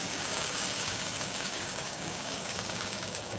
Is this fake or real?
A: fake